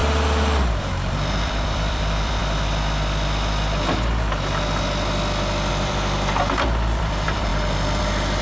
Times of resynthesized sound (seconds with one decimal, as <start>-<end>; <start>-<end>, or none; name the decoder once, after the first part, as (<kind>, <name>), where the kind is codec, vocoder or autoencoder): 0.8-2.4 (vocoder, BigVGAN v2); 5.7-8.4